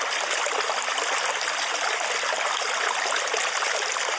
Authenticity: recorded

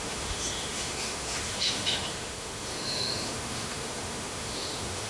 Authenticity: remade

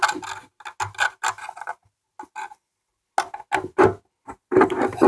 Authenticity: recorded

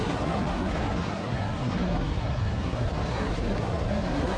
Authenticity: remade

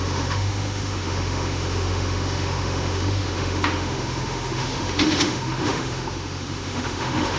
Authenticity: remade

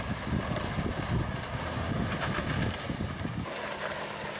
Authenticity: recorded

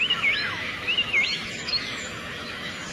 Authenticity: remade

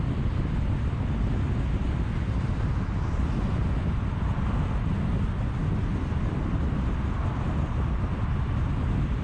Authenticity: recorded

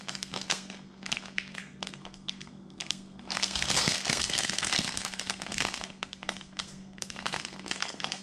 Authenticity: remade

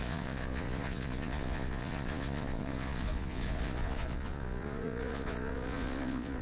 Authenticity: remade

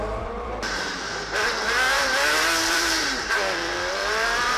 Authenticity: remade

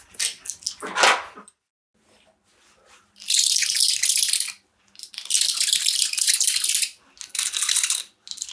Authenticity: recorded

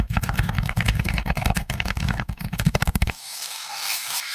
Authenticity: remade